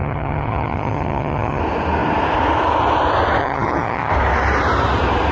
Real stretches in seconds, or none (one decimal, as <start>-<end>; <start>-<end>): 1.6-3.4; 4.1-5.3